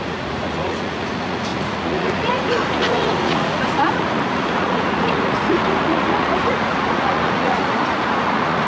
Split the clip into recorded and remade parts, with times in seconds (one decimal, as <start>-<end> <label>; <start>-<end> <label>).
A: 0.0-8.7 remade